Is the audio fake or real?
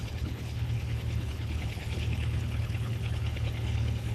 fake